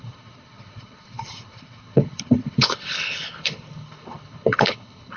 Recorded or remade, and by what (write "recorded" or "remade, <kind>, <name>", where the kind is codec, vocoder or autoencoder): remade, codec, HILCodec